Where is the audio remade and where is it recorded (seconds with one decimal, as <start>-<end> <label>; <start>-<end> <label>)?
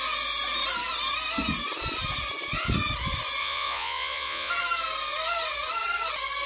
0.0-3.4 recorded; 3.4-4.5 remade; 4.5-6.5 recorded